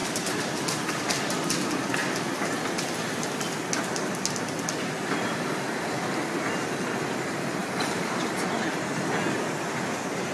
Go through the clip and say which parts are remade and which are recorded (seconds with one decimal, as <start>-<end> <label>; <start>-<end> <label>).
0.0-1.2 remade; 1.2-7.6 recorded; 7.6-8.5 remade; 8.5-10.3 recorded